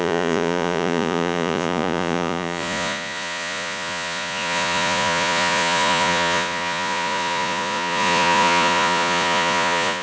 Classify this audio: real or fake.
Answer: fake